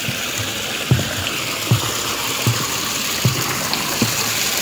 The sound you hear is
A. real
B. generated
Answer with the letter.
A